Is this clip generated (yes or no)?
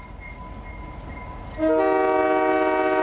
no